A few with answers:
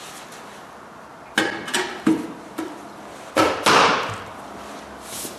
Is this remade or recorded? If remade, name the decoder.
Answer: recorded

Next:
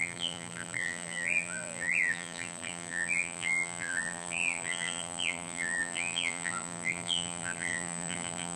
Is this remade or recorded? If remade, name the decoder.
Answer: remade, vocoder, BigVGAN v2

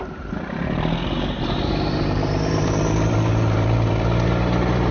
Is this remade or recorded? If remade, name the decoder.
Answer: remade, vocoder, BigVGAN v2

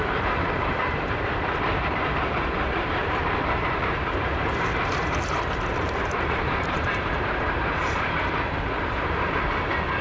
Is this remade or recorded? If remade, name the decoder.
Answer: remade, vocoder, BigVGAN v2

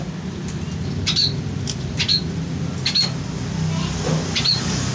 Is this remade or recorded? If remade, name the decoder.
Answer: recorded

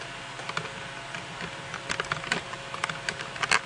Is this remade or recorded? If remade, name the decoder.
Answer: recorded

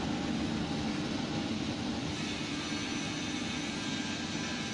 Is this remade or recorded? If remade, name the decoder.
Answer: recorded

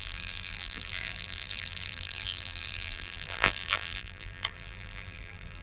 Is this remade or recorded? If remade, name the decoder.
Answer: remade, vocoder, BigVGAN v2